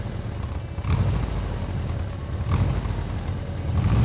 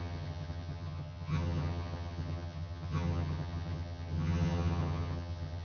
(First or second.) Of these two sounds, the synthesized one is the second